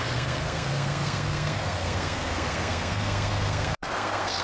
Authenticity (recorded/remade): remade